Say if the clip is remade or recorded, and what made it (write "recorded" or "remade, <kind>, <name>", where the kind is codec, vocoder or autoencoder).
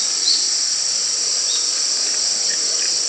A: recorded